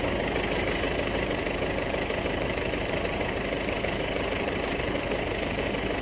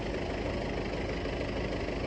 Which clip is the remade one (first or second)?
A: first